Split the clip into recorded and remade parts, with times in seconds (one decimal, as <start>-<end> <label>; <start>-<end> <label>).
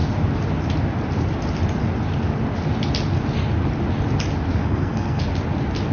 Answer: 0.0-4.6 recorded; 4.6-5.2 remade; 5.2-5.9 recorded